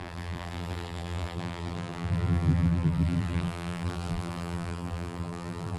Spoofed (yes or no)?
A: yes